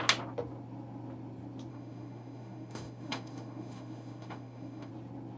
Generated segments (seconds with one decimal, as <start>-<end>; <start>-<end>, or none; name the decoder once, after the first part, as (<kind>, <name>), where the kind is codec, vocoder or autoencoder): 1.7-4.9 (autoencoder, DAC-VAE)